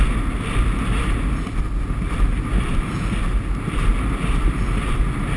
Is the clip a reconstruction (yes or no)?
no